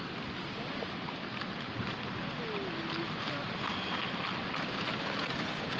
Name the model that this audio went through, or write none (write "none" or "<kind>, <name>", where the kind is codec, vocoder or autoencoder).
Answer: none